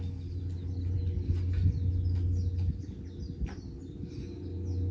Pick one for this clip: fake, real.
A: real